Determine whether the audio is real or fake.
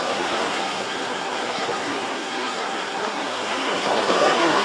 fake